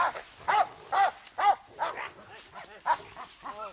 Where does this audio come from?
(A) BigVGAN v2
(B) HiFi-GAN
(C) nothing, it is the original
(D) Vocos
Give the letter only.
C